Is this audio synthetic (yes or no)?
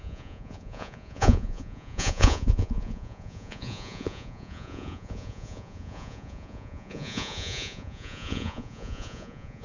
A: yes